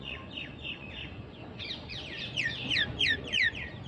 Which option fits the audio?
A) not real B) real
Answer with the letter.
A